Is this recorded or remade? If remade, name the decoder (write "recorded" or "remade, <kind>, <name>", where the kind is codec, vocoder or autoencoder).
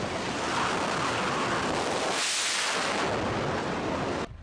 recorded